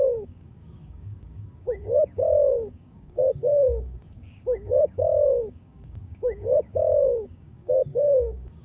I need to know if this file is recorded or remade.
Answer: remade